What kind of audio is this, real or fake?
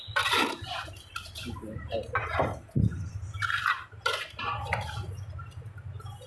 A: real